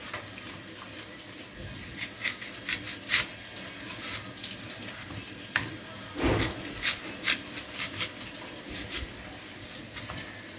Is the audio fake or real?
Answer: real